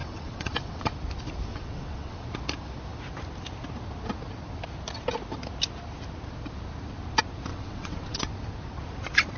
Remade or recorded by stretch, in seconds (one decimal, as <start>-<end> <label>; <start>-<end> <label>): 0.0-0.9 remade; 0.9-1.5 recorded; 1.5-2.2 remade; 2.2-7.5 recorded; 7.5-8.2 remade; 8.2-9.4 recorded